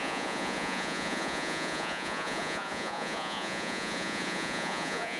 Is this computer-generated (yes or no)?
yes